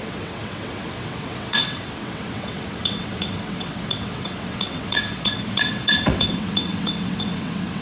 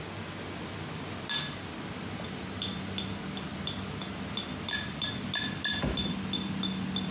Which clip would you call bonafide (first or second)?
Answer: second